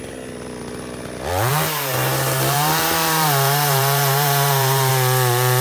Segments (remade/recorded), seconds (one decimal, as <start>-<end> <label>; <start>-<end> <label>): 0.0-1.5 recorded; 1.5-4.9 remade; 4.9-5.6 recorded